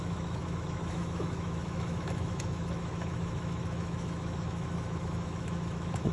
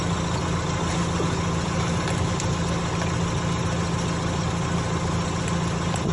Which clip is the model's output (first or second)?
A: first